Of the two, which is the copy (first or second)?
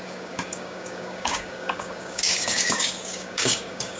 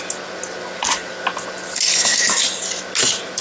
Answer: first